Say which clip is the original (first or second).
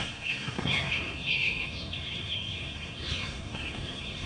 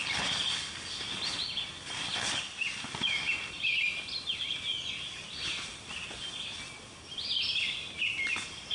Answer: second